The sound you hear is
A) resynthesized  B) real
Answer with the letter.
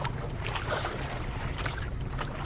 A